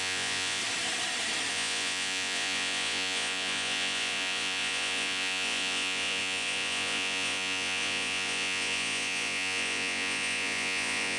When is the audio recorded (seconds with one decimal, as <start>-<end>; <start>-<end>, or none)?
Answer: 0.6-1.5